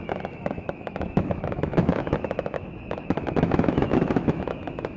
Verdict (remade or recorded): remade